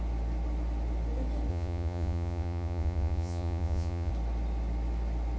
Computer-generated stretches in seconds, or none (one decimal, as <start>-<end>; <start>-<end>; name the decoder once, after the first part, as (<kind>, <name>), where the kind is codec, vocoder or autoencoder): 1.5-4.1 (vocoder, Vocos)